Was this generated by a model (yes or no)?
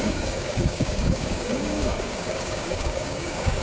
yes